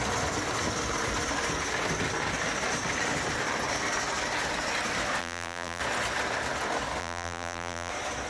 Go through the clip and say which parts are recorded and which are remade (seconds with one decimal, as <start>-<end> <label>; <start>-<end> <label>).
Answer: 0.0-5.2 recorded; 5.2-5.8 remade; 5.8-7.0 recorded; 7.0-7.9 remade; 7.9-8.3 recorded